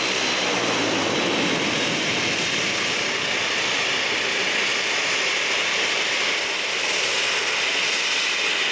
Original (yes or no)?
yes